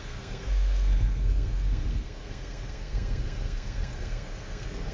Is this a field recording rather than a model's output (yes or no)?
no